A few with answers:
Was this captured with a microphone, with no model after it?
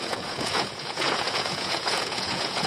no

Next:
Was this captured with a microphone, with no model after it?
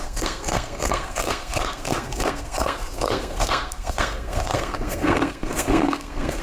no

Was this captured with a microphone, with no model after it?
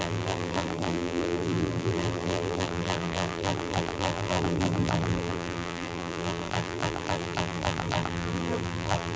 no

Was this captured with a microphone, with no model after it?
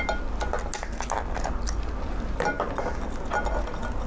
yes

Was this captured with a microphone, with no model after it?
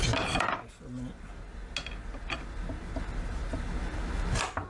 yes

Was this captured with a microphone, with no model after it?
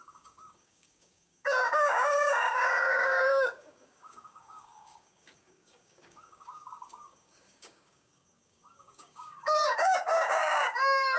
no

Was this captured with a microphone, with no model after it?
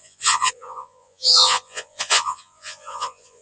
no